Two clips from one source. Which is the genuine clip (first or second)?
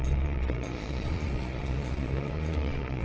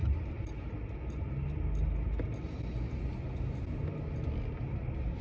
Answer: second